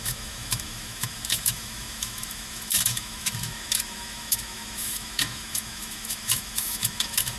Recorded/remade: remade